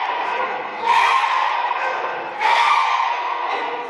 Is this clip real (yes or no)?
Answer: no